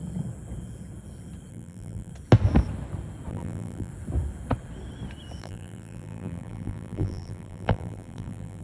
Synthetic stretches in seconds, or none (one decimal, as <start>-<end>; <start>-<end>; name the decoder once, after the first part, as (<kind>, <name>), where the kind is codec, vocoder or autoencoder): 1.5-2.1 (vocoder, BigVGAN v2); 3.3-3.9; 5.4-8.6